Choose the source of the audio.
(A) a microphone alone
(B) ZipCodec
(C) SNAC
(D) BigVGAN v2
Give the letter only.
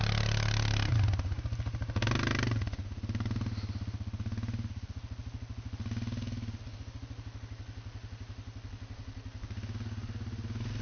A